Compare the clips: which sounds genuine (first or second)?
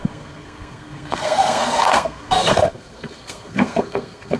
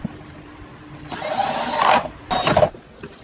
second